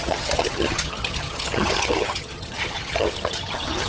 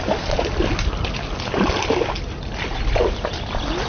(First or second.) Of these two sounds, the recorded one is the second